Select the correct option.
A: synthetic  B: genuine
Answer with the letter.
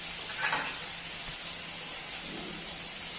B